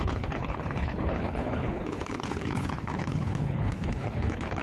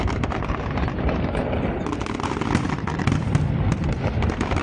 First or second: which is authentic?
second